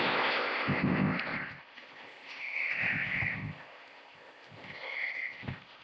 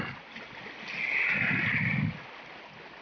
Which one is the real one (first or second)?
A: second